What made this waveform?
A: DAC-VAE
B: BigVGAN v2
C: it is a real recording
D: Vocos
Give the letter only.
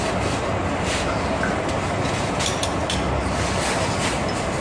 C